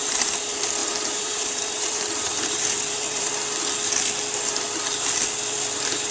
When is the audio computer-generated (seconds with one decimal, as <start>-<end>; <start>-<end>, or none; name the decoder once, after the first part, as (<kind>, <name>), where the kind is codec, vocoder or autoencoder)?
0.8-3.3 (vocoder, BigVGAN v2)